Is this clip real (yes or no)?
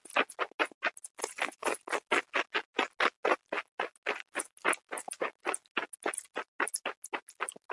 yes